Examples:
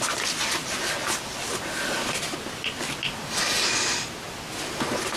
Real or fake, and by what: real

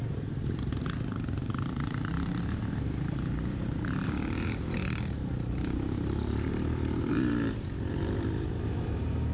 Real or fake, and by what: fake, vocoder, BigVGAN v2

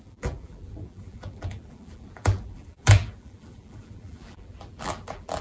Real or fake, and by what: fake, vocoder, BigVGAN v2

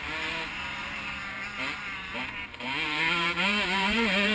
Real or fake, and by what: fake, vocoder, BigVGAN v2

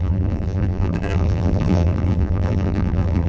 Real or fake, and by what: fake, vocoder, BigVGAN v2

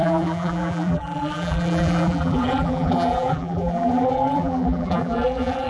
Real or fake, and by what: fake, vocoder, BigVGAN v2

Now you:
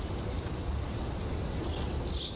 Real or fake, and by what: real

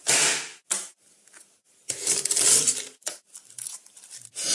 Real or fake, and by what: fake, vocoder, BigVGAN v2